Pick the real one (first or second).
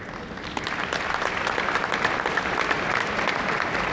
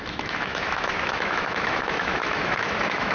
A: first